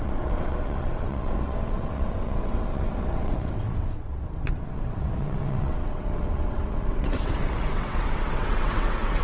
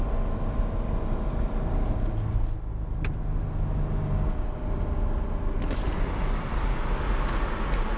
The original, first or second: second